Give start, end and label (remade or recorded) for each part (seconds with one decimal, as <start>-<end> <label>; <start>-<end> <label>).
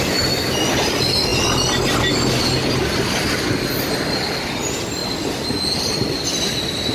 0.0-6.9 recorded